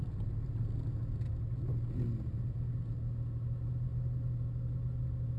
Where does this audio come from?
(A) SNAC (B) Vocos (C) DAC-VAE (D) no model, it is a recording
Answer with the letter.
D